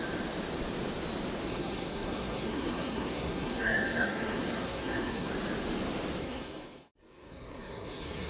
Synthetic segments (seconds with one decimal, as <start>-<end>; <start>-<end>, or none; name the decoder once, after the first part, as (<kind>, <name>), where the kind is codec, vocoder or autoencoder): 1.5-5.3 (codec, SNAC); 6.2-8.3